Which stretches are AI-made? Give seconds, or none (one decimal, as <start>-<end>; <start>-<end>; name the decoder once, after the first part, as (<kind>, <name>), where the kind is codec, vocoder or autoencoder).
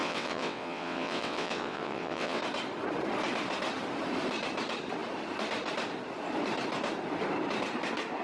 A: 0.0-2.4 (vocoder, WaveNeXt)